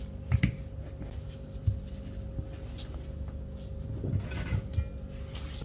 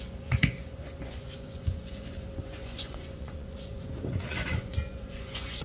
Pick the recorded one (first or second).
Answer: first